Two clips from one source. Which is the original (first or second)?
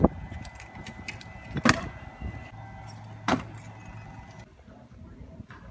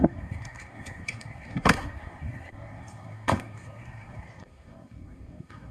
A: first